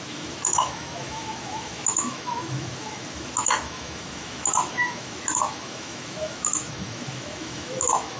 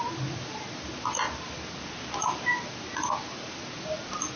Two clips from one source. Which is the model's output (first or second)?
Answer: first